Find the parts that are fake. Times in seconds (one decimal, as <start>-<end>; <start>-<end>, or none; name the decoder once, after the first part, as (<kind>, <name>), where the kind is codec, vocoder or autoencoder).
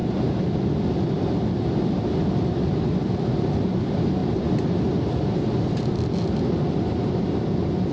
none